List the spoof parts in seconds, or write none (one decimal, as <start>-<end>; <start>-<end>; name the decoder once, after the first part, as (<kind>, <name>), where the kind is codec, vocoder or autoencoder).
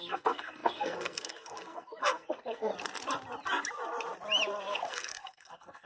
0.0-2.7 (codec, SNAC); 4.6-5.9